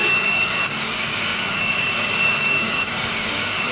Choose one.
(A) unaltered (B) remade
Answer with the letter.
B